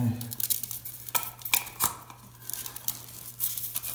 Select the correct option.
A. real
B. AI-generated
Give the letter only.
A